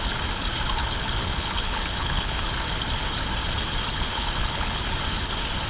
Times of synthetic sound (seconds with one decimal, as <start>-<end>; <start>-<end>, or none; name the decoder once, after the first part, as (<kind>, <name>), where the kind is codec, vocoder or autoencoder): 0.8-2.5 (codec, HILCodec); 4.1-4.8